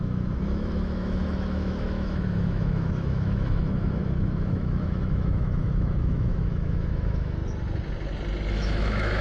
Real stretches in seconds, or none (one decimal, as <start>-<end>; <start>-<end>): 7.4-8.5